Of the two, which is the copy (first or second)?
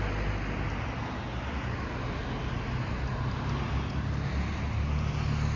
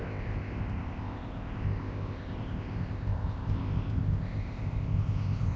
second